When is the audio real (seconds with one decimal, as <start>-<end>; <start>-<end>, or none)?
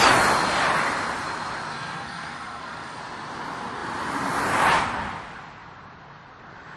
0.0-1.7; 3.0-6.8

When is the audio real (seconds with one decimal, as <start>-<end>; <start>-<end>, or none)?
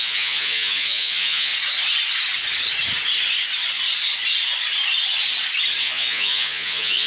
1.5-5.8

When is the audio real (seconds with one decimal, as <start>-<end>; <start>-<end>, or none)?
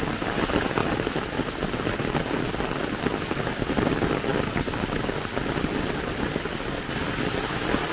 0.0-7.9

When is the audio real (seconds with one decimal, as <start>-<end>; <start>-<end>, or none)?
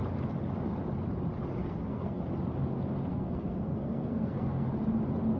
0.0-1.6; 2.2-3.1; 4.7-5.4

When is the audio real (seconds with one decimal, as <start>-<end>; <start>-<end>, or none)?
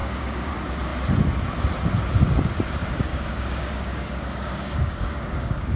0.5-3.1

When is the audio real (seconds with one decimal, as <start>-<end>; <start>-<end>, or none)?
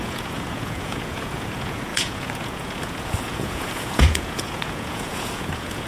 none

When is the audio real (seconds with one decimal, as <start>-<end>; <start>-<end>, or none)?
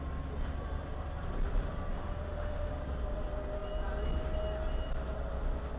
0.0-1.9; 2.7-5.8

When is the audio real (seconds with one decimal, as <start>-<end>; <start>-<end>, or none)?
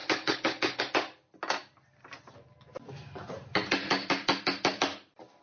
0.8-5.4